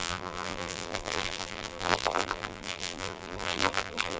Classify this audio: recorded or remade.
remade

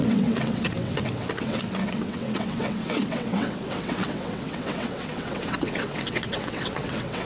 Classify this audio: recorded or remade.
remade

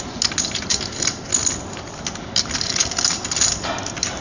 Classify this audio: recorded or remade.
recorded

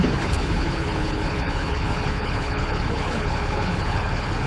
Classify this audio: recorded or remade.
remade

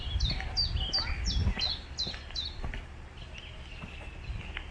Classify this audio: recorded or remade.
recorded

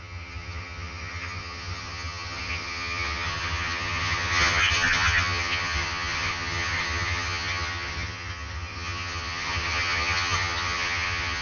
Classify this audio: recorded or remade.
remade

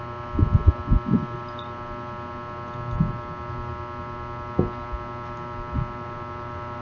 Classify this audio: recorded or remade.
recorded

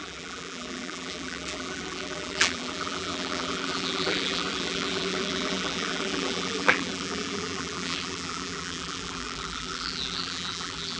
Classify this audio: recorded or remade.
remade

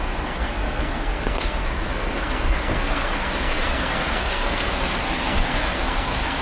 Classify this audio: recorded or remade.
remade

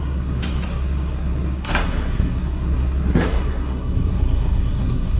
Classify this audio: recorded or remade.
remade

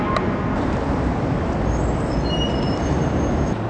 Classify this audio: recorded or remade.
recorded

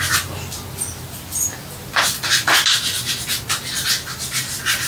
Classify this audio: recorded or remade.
recorded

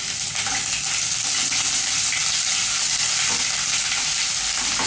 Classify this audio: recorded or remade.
recorded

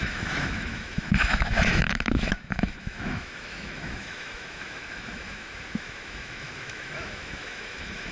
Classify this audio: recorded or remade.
remade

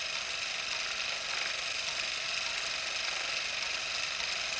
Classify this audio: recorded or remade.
recorded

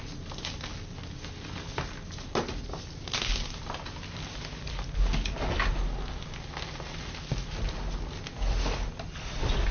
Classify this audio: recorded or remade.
recorded